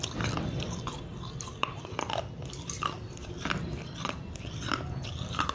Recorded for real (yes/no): no